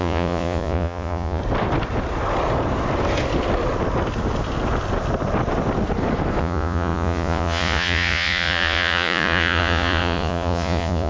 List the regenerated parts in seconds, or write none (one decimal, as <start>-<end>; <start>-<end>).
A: 0.0-1.4; 6.4-11.1